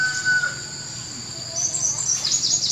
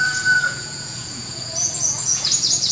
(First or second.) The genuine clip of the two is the first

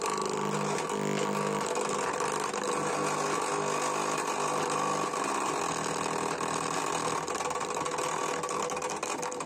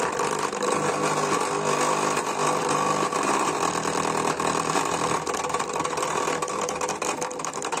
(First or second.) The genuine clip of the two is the first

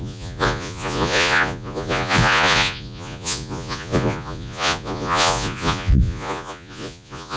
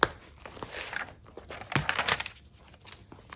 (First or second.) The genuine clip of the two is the second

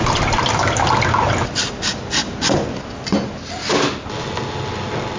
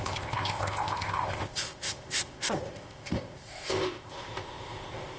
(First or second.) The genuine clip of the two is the first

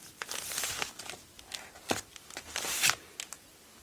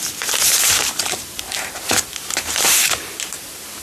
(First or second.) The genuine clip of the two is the first